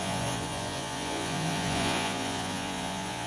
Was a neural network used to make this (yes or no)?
yes